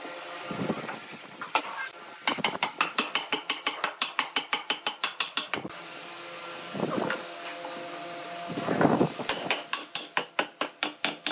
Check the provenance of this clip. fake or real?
real